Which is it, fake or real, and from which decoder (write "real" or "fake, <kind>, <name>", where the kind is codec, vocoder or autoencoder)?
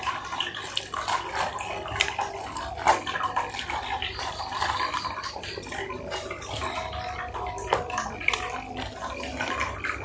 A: real